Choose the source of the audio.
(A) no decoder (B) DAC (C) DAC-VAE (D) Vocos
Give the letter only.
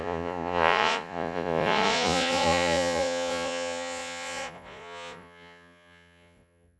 D